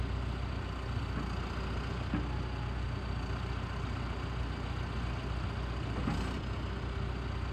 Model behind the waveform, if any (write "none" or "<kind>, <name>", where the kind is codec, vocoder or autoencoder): none